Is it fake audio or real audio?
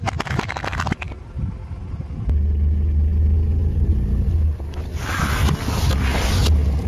real